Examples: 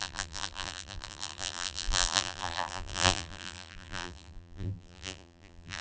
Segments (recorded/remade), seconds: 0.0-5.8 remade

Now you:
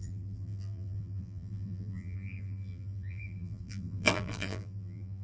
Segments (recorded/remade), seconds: 0.0-5.2 remade

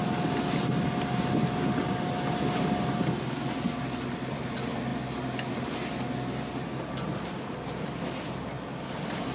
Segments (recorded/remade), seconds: 0.0-9.3 recorded

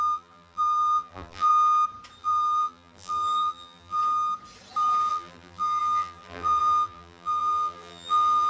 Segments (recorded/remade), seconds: 0.0-1.5 remade; 1.5-2.2 recorded; 2.2-4.0 remade; 4.0-5.1 recorded; 5.1-8.5 remade